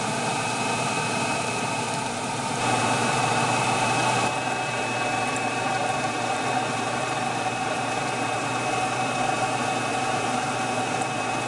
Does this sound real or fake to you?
fake